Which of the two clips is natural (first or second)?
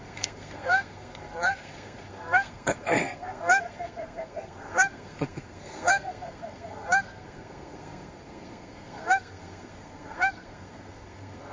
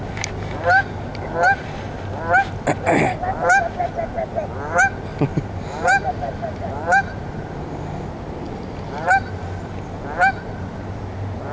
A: second